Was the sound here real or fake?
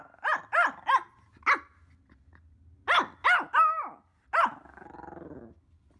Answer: real